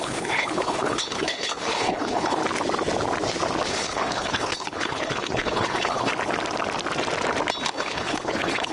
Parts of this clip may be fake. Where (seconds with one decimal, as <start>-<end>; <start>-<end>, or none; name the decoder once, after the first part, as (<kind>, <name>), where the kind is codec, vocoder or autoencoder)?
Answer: 0.0-2.4 (codec, HILCodec); 3.7-6.1; 7.7-8.7